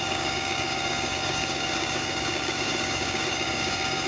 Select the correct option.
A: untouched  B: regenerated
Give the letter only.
B